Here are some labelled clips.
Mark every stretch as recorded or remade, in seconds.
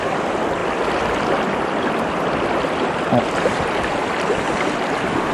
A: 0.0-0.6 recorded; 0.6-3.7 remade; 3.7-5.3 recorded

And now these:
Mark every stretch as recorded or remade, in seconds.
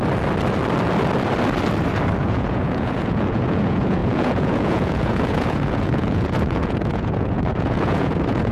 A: 0.0-2.2 recorded; 2.2-8.5 remade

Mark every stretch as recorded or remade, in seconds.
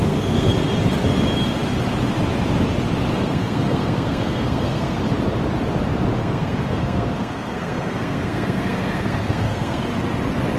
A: 0.0-0.5 remade; 0.5-3.1 recorded; 3.1-5.0 remade; 5.0-6.2 recorded; 6.2-9.8 remade; 9.8-10.6 recorded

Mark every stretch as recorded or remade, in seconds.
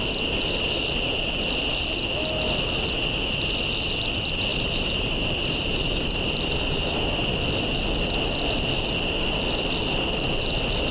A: 0.0-4.5 recorded; 4.5-7.0 remade; 7.0-10.9 recorded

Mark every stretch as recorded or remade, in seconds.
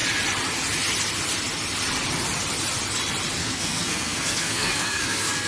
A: 0.0-3.4 recorded; 3.4-5.5 remade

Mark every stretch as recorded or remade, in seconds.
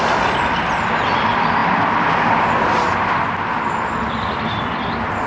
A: 0.0-5.3 recorded